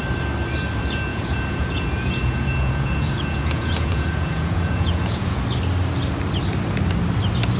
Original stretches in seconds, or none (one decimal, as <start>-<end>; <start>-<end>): 0.0-1.1; 5.4-7.6